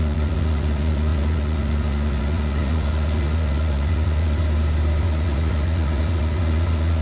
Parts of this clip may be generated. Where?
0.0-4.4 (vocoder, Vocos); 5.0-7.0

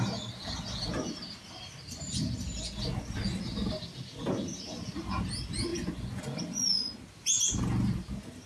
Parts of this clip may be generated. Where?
5.7-6.2 (vocoder, Vocos)

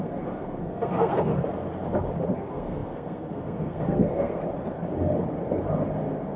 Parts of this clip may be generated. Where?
0.0-1.3 (codec, SNAC); 2.3-4.4

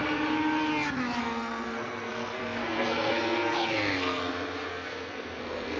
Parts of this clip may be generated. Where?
1.2-4.2 (codec, SNAC); 4.7-5.8

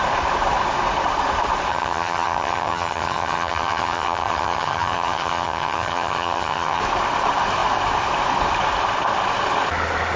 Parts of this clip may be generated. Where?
1.7-6.8 (vocoder, HiFi-GAN)

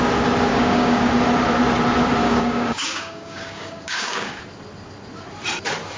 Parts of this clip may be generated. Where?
0.5-1.1 (codec, DAC); 2.2-4.4

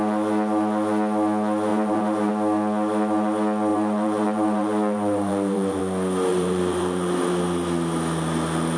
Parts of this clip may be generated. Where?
1.7-2.3 (vocoder, BigVGAN v2); 3.7-5.8; 6.3-7.3

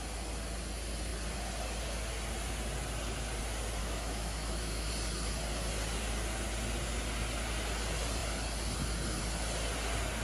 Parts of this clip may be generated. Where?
3.8-4.9 (autoencoder, DAC-VAE)